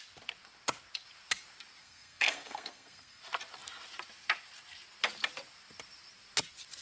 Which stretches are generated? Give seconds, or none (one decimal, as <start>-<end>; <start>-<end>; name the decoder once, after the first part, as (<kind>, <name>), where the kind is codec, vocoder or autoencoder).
1.8-3.2 (codec, SNAC)